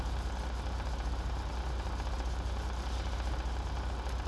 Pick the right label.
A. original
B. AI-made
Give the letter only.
A